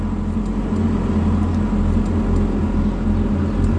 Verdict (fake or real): real